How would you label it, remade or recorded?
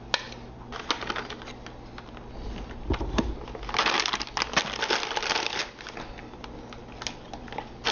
recorded